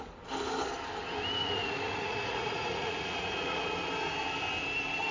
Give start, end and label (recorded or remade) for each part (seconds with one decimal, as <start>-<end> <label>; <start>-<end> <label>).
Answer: 0.0-1.4 recorded; 1.4-3.6 remade; 3.6-5.1 recorded